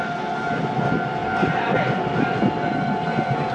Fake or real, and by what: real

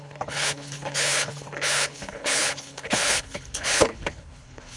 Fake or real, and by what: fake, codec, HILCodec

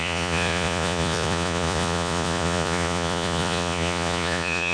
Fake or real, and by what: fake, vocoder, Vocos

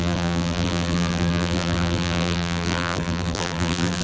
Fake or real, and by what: fake, vocoder, BigVGAN v2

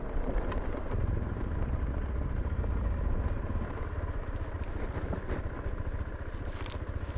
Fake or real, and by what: real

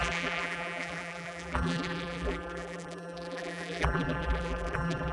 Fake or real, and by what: fake, vocoder, BigVGAN v2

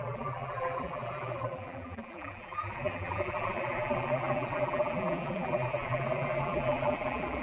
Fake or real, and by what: fake, vocoder, BigVGAN v2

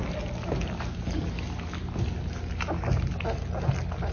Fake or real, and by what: real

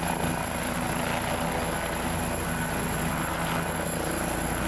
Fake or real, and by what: real